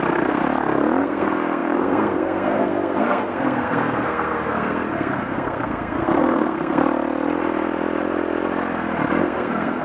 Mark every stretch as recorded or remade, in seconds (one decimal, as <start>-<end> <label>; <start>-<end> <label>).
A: 0.0-0.4 remade; 0.4-1.0 recorded; 1.0-6.8 remade; 6.8-9.2 recorded; 9.2-9.8 remade